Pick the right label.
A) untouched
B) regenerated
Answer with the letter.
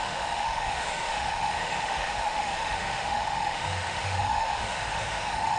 B